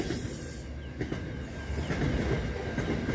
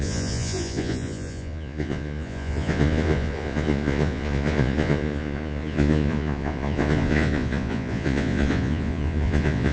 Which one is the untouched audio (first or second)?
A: first